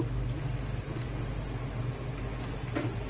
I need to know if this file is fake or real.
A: real